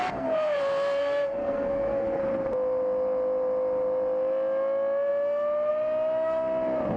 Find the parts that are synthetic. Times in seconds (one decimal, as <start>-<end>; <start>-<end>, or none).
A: 0.0-0.6; 1.0-2.2

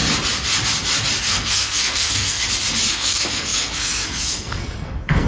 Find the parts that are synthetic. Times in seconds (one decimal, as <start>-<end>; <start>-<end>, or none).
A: 1.2-2.4; 2.9-5.3

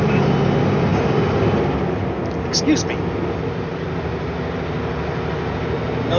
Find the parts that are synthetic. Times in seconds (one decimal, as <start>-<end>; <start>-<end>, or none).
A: none